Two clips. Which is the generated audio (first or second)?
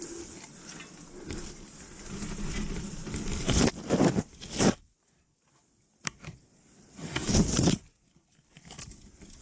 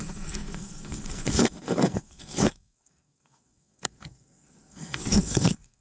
second